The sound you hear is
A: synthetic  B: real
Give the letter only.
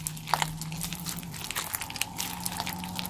B